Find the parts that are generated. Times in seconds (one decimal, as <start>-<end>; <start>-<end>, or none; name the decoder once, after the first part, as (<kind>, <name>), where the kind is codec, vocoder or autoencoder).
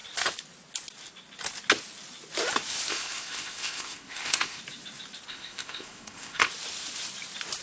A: 2.9-4.6 (codec, ZipCodec); 5.3-6.5